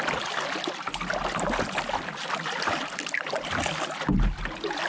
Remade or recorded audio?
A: recorded